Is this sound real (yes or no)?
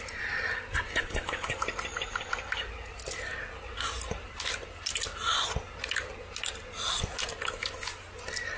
yes